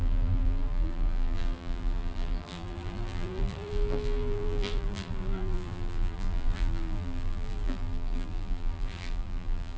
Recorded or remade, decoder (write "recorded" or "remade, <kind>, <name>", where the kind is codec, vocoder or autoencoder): remade, vocoder, BigVGAN v2